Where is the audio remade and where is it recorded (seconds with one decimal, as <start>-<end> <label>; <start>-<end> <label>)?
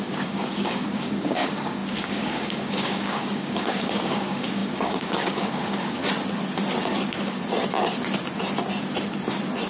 0.0-6.0 remade; 6.0-9.7 recorded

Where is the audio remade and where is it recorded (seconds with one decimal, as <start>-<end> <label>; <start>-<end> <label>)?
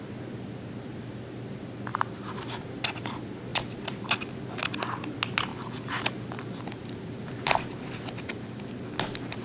0.0-1.9 recorded; 1.9-2.5 remade; 2.5-3.5 recorded; 3.5-4.3 remade; 4.3-5.5 recorded; 5.5-8.5 remade; 8.5-9.4 recorded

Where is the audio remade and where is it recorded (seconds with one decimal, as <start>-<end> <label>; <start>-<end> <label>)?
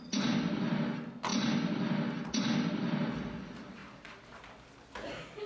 0.0-1.3 recorded; 1.3-3.1 remade; 3.1-3.8 recorded; 3.8-4.4 remade; 4.4-5.5 recorded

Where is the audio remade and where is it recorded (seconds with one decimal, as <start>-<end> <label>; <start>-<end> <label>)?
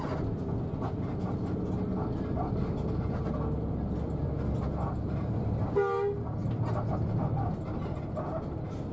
0.0-8.9 recorded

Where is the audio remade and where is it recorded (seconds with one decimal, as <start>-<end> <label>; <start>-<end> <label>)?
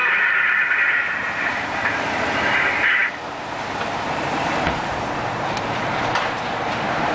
0.0-0.9 recorded; 0.9-7.1 remade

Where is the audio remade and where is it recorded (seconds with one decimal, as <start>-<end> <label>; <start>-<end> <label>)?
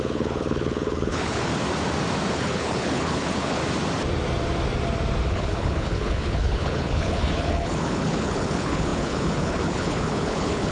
0.0-1.5 remade; 1.5-2.3 recorded; 2.3-3.6 remade; 3.6-5.3 recorded; 5.3-10.7 remade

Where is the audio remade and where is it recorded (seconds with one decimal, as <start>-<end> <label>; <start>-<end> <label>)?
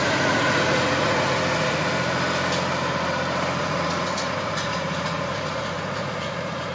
0.0-1.9 remade; 1.9-3.6 recorded; 3.6-6.7 remade